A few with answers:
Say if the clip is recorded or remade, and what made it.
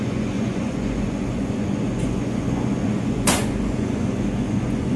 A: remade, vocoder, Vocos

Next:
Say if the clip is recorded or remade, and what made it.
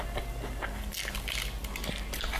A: recorded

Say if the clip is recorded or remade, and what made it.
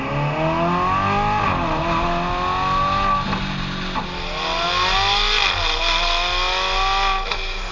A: recorded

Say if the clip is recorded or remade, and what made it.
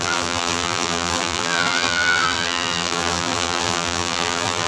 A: remade, vocoder, BigVGAN v2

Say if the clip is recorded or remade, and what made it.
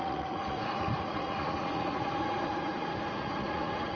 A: remade, vocoder, Vocos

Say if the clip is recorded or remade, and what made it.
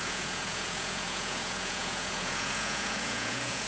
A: remade, vocoder, Vocos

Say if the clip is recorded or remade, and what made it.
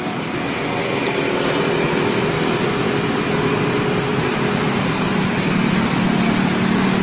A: recorded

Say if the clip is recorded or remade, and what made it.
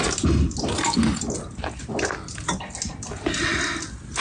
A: recorded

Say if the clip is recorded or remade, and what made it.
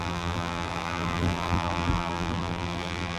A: remade, vocoder, BigVGAN v2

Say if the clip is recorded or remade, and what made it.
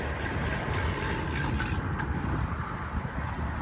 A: recorded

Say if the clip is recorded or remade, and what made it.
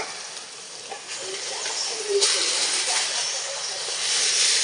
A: recorded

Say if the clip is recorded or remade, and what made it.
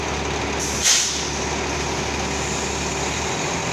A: recorded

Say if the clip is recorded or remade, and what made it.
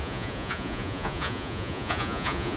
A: remade, vocoder, Vocos